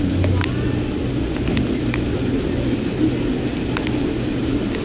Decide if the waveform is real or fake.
real